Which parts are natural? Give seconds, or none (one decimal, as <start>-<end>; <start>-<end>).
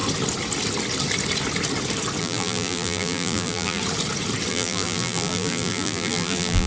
0.0-2.2; 3.8-4.5